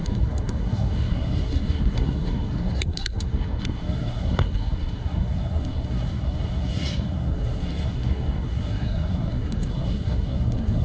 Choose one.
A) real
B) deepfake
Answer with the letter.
B